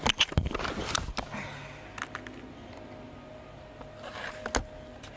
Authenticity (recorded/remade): recorded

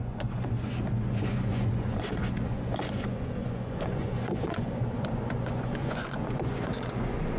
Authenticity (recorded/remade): remade